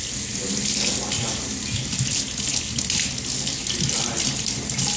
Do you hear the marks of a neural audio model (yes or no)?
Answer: no